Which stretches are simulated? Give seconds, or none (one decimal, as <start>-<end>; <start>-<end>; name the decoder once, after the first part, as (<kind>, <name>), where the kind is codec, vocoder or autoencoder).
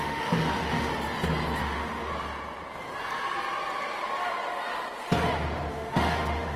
0.0-0.9 (autoencoder, DAC-VAE); 1.6-2.1; 5.7-6.6